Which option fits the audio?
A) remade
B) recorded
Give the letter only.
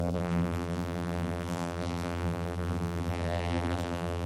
A